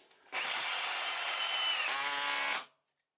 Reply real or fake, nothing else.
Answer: real